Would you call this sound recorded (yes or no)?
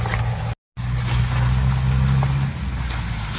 yes